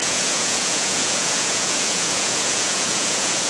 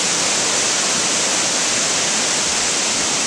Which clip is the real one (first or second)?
second